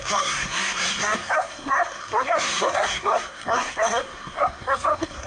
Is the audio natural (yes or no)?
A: no